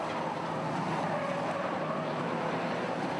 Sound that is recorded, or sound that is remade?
recorded